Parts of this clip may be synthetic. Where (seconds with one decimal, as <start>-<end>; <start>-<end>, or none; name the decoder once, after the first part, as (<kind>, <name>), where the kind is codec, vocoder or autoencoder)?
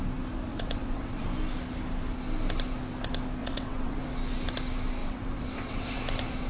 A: 0.5-1.3 (vocoder, WaveNeXt); 3.4-4.1; 5.0-6.0